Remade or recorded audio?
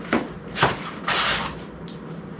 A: remade